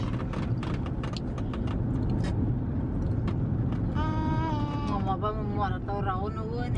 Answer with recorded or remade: recorded